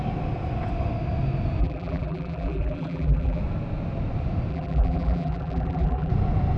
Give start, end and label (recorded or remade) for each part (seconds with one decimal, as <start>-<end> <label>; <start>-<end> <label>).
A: 0.0-1.6 recorded; 1.6-3.4 remade; 3.4-4.5 recorded; 4.5-6.1 remade; 6.1-6.6 recorded